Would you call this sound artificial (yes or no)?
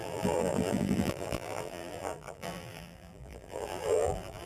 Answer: yes